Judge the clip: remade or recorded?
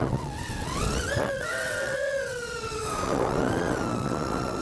remade